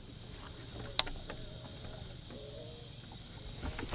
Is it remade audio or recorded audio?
recorded